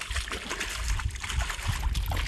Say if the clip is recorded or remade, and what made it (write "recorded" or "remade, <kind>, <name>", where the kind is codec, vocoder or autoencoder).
recorded